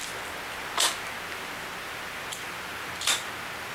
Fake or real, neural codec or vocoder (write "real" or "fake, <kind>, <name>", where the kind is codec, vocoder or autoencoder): real